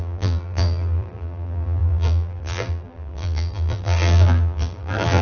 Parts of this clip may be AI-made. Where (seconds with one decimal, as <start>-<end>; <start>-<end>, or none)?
0.0-5.2